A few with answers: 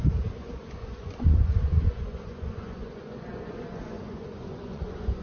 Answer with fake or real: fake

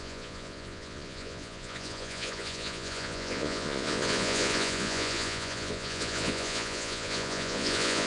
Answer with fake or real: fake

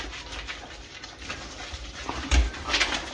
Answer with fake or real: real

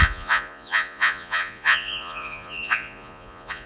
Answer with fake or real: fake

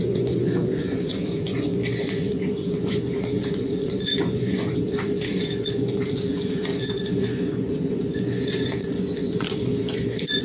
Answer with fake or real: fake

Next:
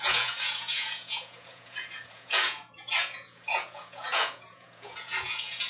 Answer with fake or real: fake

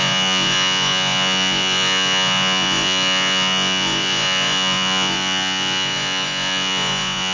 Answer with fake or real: fake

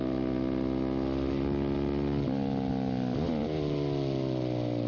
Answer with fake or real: real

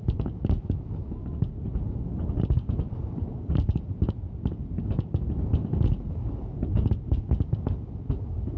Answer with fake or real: real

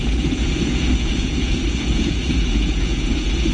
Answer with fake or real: fake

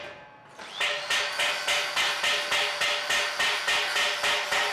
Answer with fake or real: real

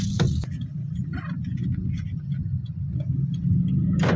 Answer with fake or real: real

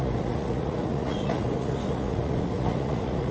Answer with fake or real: fake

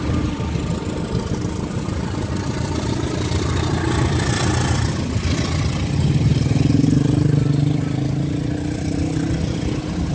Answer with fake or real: real